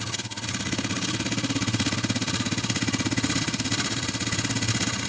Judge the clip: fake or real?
real